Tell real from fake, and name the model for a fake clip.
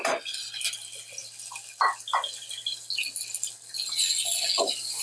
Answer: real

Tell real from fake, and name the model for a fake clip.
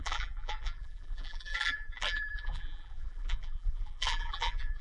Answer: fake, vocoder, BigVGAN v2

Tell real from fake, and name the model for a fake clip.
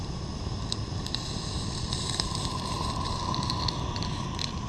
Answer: fake, vocoder, BigVGAN v2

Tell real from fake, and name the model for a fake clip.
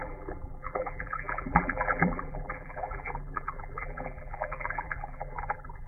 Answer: fake, vocoder, BigVGAN v2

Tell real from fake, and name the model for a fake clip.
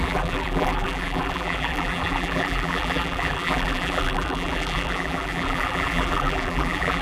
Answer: fake, vocoder, BigVGAN v2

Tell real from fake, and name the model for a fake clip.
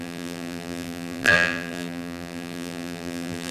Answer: fake, vocoder, BigVGAN v2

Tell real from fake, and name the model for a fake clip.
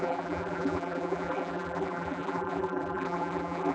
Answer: fake, vocoder, BigVGAN v2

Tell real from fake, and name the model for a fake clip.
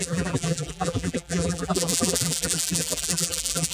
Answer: fake, vocoder, BigVGAN v2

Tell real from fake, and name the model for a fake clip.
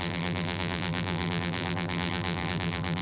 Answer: fake, vocoder, BigVGAN v2